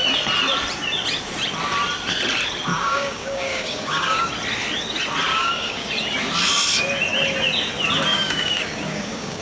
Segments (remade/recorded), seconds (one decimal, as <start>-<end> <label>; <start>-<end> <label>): 0.0-2.7 recorded; 2.7-4.3 remade; 4.3-5.3 recorded; 5.3-5.9 remade; 5.9-8.1 recorded; 8.1-9.4 remade